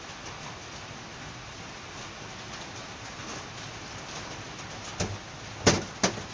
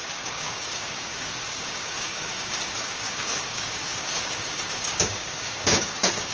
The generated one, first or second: second